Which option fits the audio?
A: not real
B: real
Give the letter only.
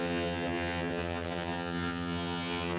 A